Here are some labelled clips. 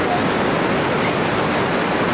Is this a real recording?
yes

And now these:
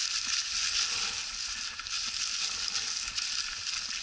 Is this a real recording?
yes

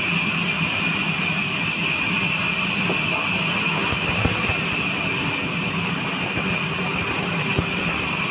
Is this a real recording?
yes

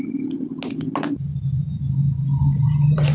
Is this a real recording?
yes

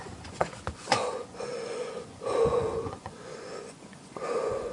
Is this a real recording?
no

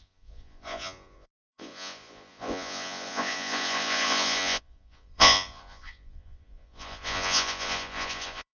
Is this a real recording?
no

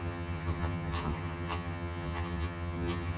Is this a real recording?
no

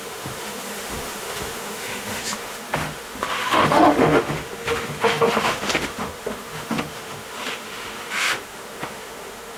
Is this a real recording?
no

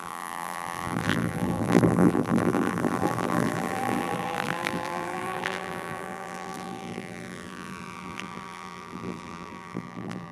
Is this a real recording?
no